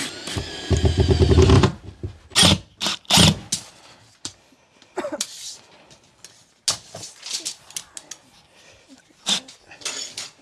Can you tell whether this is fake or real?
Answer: real